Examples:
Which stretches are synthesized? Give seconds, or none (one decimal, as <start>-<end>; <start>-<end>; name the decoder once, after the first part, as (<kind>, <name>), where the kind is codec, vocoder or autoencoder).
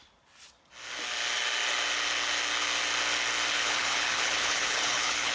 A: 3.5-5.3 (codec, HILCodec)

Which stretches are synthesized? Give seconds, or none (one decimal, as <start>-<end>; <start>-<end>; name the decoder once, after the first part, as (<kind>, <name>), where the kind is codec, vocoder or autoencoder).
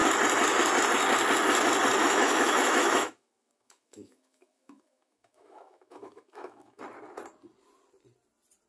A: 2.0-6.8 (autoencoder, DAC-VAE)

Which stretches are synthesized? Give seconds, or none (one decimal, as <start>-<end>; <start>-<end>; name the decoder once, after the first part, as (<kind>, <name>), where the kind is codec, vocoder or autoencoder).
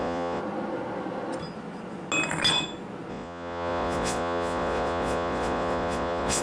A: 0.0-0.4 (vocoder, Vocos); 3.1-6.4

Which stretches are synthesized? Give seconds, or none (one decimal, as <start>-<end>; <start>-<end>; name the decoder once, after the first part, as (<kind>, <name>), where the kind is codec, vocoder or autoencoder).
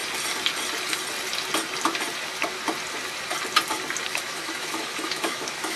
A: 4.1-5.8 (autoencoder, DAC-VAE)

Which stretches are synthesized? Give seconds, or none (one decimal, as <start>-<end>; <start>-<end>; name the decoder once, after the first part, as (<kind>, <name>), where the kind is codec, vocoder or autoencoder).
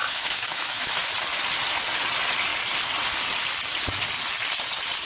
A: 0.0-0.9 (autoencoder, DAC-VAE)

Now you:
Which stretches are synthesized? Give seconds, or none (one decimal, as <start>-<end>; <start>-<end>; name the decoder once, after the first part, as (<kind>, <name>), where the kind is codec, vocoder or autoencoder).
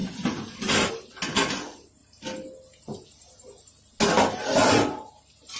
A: 0.0-0.9 (vocoder, BigVGAN v2)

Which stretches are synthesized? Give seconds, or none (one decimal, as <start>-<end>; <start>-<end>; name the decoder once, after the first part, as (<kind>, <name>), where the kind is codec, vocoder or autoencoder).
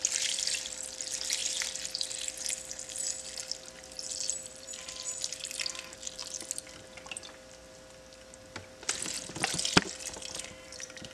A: 0.0-1.4 (vocoder, BigVGAN v2); 4.1-6.2; 10.4-11.1